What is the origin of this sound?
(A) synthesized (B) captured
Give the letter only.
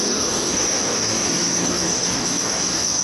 A